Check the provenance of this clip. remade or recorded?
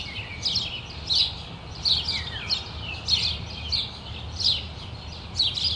recorded